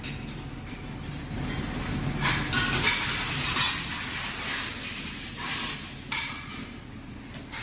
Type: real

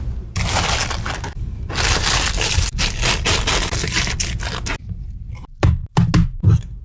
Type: real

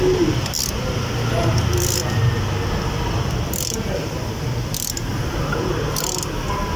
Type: real